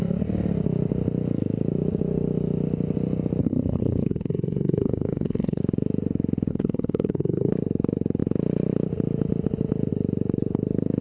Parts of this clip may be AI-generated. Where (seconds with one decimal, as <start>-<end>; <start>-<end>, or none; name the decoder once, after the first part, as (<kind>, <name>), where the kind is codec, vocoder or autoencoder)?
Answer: 3.4-5.6 (codec, SNAC); 6.5-7.5